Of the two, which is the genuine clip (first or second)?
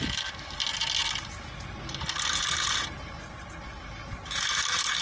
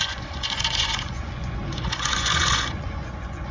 first